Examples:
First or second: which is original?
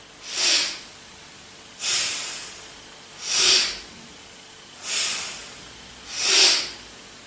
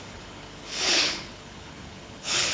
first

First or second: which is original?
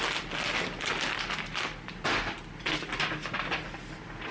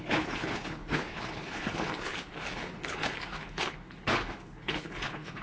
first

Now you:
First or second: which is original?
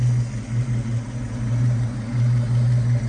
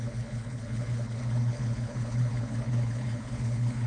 first